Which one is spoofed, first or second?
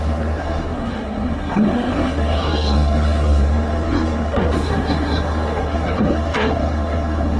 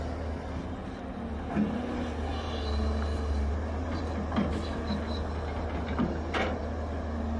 first